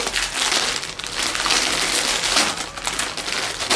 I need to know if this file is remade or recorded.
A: recorded